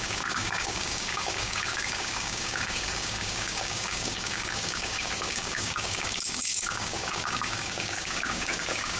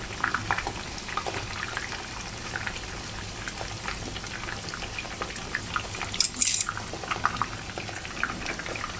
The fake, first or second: first